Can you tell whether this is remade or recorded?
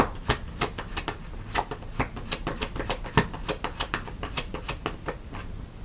recorded